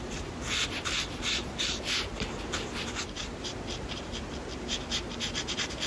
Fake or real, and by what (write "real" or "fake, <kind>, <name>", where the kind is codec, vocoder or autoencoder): fake, vocoder, BigVGAN v2